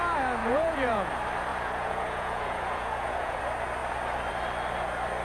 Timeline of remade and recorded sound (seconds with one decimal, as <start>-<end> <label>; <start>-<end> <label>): 0.0-0.4 recorded; 0.4-1.1 remade; 1.1-1.5 recorded; 1.5-3.4 remade; 3.4-5.2 recorded